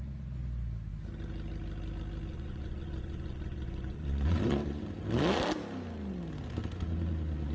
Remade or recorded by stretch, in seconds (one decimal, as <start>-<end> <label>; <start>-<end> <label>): 0.0-2.3 recorded; 2.3-4.8 remade; 4.8-7.5 recorded